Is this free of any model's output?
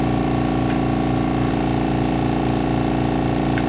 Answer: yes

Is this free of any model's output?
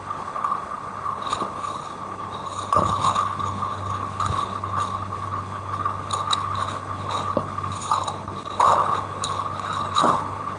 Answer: no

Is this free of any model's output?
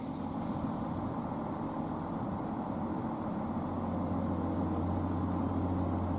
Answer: yes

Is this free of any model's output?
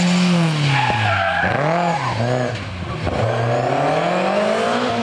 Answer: yes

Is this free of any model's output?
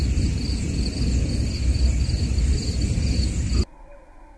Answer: yes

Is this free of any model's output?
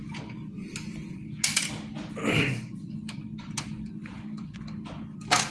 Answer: yes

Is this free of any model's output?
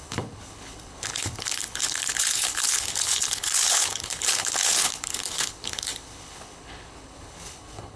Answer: no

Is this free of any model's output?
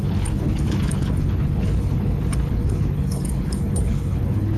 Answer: no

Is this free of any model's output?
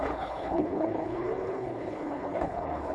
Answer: no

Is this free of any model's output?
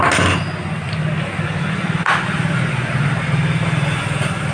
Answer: yes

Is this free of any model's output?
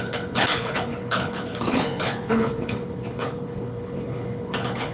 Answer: no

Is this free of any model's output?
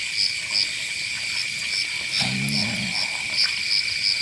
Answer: yes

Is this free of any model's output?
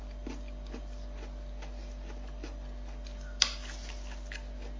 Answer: yes